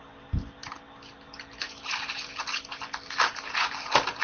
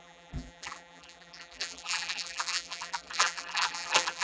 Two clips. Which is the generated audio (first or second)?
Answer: second